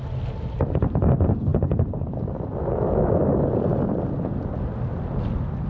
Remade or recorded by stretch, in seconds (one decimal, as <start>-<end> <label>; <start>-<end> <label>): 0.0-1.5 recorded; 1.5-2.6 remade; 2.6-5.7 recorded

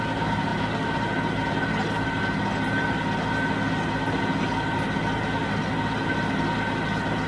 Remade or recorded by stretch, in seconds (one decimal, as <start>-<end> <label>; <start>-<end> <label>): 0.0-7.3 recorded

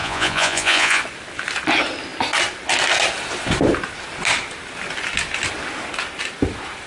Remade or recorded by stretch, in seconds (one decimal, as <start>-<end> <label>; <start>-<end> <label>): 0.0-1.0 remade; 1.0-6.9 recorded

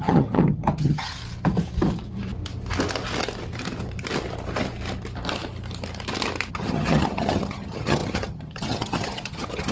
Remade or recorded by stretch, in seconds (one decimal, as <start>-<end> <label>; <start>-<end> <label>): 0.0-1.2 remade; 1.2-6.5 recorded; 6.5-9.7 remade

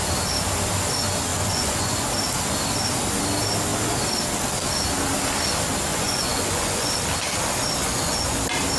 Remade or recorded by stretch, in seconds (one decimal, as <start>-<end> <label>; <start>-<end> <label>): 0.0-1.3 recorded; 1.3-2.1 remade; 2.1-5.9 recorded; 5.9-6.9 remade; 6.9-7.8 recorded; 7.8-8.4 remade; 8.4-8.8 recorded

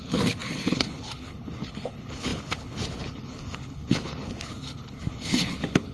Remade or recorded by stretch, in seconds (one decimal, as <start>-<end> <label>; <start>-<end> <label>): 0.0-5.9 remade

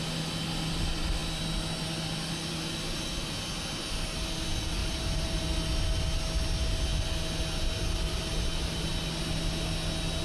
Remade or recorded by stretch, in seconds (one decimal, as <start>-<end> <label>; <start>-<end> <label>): 0.0-4.8 recorded; 4.8-5.4 remade; 5.4-8.3 recorded; 8.3-8.9 remade; 8.9-10.2 recorded

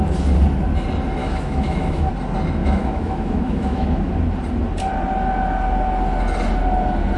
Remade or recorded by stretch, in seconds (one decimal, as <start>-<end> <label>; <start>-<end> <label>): 0.0-1.2 recorded; 1.2-2.1 remade; 2.1-2.6 recorded; 2.6-4.1 remade; 4.1-7.2 recorded